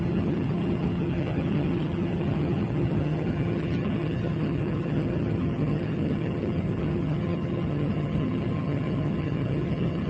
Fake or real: fake